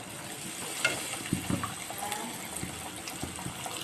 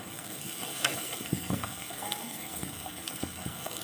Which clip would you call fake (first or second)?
second